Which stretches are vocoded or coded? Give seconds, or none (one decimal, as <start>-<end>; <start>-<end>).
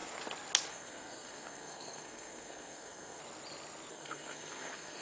0.7-3.2; 3.9-5.0